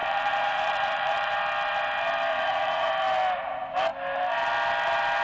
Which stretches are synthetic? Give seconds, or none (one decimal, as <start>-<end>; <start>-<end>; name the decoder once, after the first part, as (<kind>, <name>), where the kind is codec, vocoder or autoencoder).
0.0-1.3 (vocoder, Vocos); 2.3-2.9

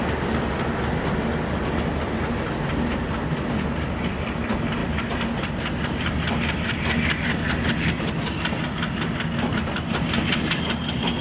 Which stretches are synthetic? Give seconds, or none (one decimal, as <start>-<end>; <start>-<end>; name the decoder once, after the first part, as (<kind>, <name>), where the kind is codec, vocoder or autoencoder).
none

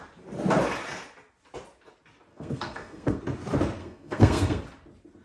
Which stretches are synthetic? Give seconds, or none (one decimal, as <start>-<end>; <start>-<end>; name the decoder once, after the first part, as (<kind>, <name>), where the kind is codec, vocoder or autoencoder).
2.3-3.2 (codec, SNAC); 3.8-4.6

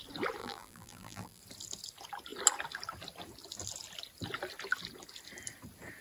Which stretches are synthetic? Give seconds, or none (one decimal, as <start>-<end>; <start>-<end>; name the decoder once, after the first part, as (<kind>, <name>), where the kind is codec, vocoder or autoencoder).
0.4-1.4 (vocoder, BigVGAN v2)

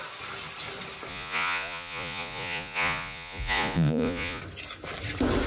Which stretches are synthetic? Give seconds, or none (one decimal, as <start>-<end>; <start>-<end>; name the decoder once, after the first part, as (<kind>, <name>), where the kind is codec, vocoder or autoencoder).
1.1-4.4 (vocoder, Vocos)

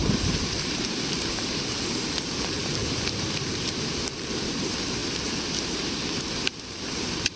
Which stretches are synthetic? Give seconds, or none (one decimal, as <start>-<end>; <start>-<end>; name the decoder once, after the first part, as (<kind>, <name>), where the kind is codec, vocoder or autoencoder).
0.0-7.4 (vocoder, BigVGAN v2)

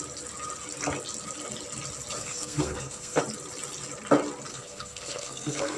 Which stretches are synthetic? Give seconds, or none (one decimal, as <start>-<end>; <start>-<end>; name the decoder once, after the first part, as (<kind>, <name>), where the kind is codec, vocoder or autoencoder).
2.2-3.2 (codec, SNAC); 4.5-5.8

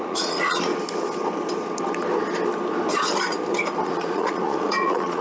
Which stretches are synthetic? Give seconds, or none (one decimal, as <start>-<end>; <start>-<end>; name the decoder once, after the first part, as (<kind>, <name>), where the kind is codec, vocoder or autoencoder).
0.0-0.7 (vocoder, Vocos); 3.8-5.2